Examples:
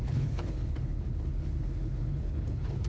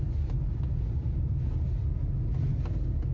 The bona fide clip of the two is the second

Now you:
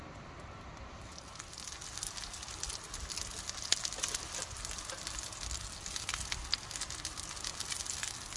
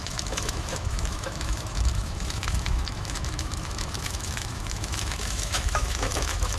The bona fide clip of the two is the first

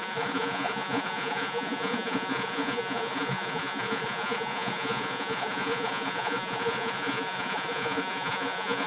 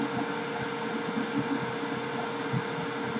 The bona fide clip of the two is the second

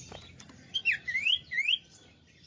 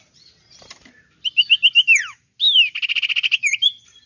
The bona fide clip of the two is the second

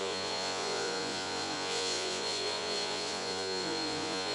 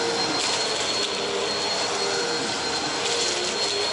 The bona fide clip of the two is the second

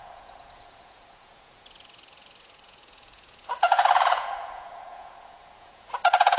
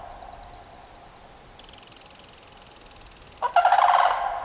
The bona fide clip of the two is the second